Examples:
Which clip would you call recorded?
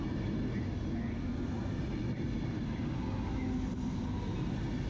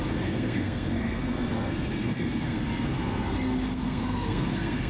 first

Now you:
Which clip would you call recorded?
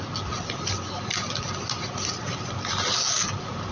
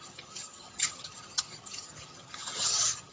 first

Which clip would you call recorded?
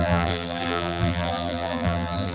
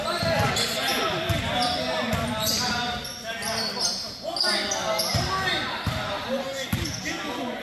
second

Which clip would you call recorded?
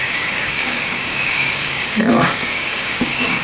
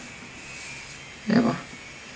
second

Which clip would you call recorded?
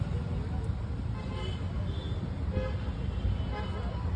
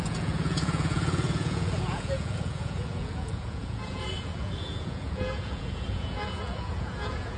first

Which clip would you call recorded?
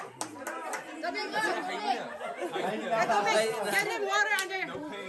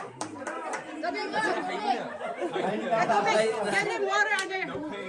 first